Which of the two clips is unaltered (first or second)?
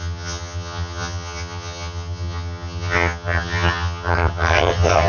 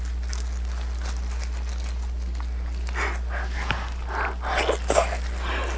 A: second